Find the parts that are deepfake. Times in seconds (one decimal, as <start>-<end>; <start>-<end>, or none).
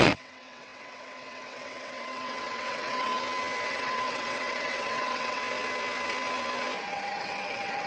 0.0-3.1; 3.7-5.4; 6.8-7.9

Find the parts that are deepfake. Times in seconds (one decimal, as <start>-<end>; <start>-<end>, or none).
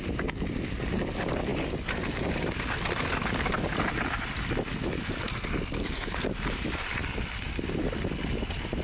none